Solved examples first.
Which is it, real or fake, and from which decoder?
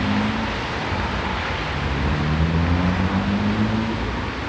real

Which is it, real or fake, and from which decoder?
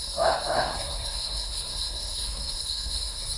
fake, codec, SNAC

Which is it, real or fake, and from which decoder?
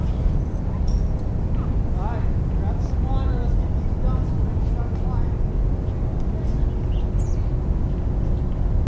real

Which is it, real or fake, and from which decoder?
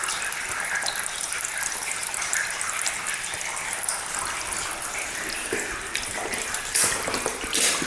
real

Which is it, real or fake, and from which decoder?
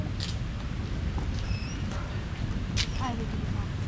real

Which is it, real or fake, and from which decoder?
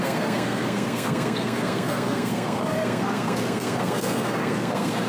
fake, codec, SNAC